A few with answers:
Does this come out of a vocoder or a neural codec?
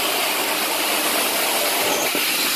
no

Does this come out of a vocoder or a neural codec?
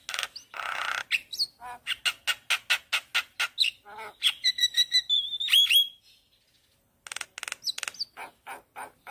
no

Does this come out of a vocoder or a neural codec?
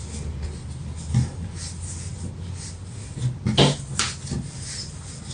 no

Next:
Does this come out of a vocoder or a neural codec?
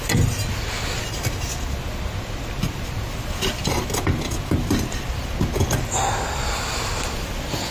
no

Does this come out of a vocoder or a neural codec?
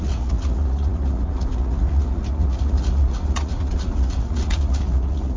yes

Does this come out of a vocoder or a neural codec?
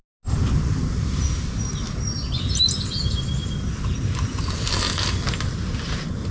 no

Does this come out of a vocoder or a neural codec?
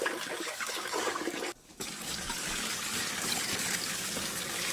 yes